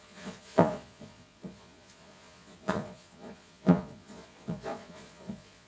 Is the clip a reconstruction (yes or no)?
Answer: yes